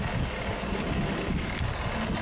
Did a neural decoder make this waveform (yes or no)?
no